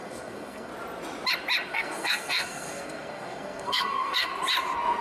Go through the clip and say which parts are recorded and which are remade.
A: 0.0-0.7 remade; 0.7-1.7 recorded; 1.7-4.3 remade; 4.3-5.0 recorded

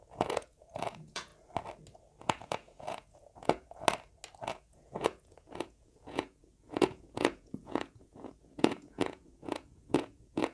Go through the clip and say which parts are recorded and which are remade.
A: 0.0-1.3 remade; 1.3-2.2 recorded; 2.2-3.8 remade; 3.8-4.5 recorded; 4.5-10.5 remade

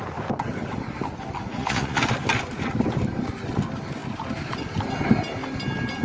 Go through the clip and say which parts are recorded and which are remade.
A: 0.0-1.4 recorded; 1.4-2.0 remade; 2.0-6.0 recorded

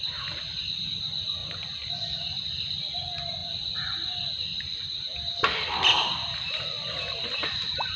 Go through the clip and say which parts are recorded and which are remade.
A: 0.0-8.0 recorded

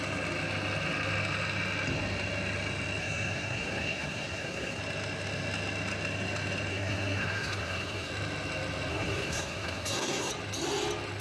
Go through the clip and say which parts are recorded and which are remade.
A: 0.0-3.0 recorded; 3.0-4.8 remade; 4.8-6.7 recorded; 6.7-8.1 remade; 8.1-8.9 recorded; 8.9-10.3 remade; 10.3-11.2 recorded

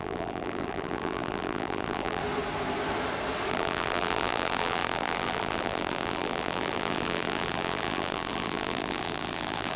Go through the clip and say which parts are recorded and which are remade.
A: 0.0-2.2 remade; 2.2-3.5 recorded; 3.5-9.8 remade